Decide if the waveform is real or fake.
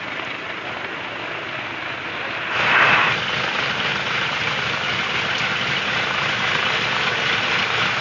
real